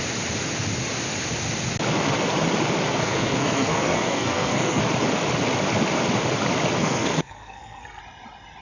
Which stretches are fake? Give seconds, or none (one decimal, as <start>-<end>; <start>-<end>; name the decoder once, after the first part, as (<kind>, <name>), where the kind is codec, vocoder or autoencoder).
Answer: 3.0-4.8 (codec, SNAC); 6.8-8.0